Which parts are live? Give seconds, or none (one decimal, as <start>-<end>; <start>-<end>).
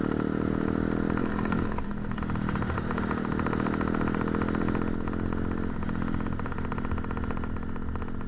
0.0-1.2; 2.2-8.3